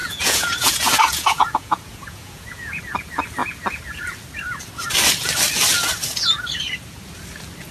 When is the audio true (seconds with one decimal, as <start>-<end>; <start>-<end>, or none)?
2.8-7.7